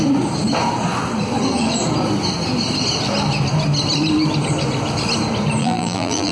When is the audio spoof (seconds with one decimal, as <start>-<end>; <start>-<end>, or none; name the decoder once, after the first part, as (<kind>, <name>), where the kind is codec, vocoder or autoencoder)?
5.6-6.3 (vocoder, BigVGAN v2)